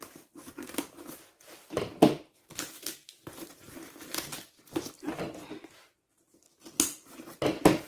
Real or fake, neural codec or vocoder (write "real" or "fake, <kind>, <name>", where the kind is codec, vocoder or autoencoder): real